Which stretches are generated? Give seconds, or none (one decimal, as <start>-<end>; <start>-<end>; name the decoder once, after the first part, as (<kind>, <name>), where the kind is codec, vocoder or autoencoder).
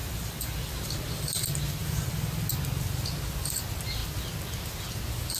0.0-0.7 (vocoder, BigVGAN v2); 1.8-2.5